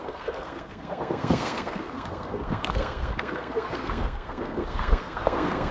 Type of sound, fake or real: fake